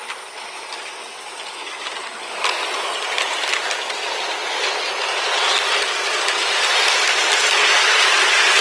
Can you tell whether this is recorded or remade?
recorded